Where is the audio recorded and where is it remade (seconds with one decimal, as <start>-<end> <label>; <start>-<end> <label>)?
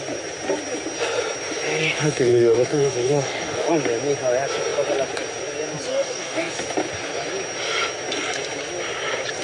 0.0-1.8 recorded; 1.8-3.7 remade; 3.7-5.9 recorded; 5.9-6.5 remade; 6.5-9.4 recorded